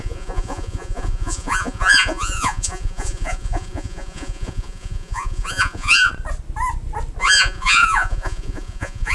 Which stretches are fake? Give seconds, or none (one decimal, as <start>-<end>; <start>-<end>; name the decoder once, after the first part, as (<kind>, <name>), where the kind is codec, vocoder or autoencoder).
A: 0.0-6.1 (vocoder, Vocos); 7.2-9.1